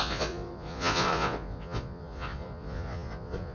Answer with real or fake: fake